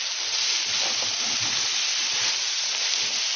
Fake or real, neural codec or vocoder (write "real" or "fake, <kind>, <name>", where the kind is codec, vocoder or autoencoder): real